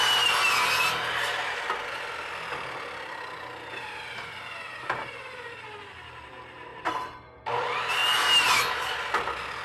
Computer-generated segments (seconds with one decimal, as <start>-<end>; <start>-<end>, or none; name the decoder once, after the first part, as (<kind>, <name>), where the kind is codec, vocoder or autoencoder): 0.0-8.0 (vocoder, BigVGAN v2); 8.7-9.6